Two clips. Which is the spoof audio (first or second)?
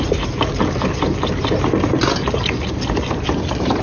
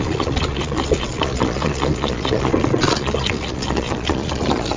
second